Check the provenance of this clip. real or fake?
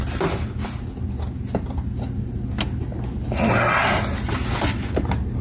real